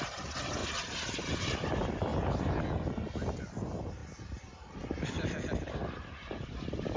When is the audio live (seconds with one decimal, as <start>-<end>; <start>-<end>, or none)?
0.6-1.4; 2.1-2.6; 4.0-5.1; 5.8-6.3